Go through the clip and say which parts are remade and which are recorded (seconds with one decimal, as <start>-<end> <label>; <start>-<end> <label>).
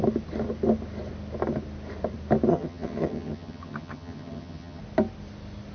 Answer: 0.0-2.5 recorded; 2.5-4.8 remade; 4.8-5.7 recorded